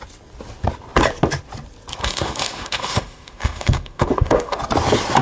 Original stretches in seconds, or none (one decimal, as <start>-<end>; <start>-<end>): 0.0-2.0; 4.6-5.2